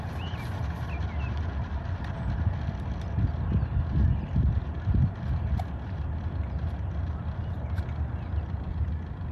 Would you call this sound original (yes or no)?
yes